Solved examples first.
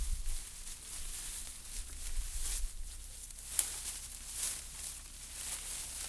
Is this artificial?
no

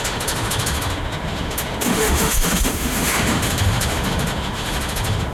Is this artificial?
yes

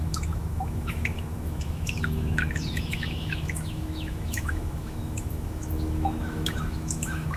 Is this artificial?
yes